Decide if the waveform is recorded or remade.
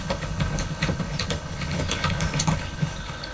remade